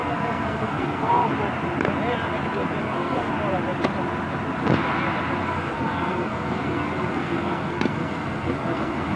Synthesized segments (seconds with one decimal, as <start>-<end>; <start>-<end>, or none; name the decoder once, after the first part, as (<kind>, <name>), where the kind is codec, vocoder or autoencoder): 0.0-1.3 (codec, SNAC); 2.8-3.3; 5.4-9.2